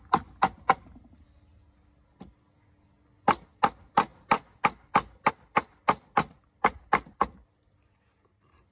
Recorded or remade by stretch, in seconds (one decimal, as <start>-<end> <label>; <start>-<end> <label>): 0.0-8.7 recorded